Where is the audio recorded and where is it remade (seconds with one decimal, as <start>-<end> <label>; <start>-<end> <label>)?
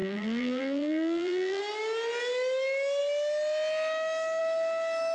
0.0-1.6 remade; 1.6-5.1 recorded